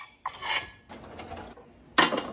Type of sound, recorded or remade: recorded